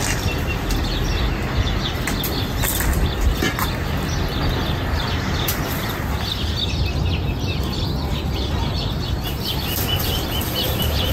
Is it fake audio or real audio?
real